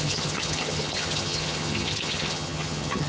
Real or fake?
fake